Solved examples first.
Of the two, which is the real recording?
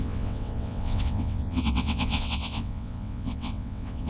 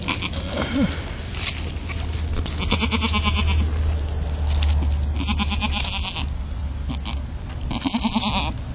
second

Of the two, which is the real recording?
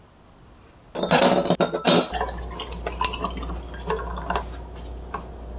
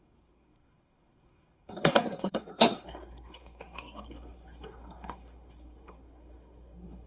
first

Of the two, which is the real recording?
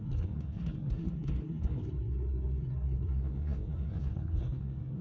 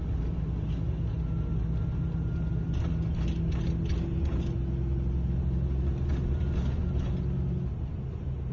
second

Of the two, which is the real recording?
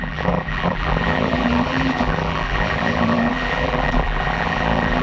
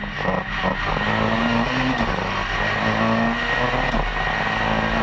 second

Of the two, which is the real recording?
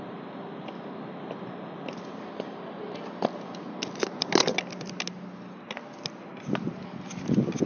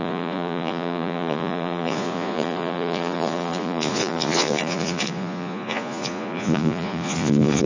first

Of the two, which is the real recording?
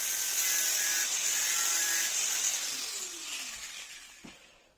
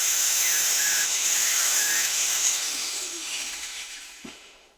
first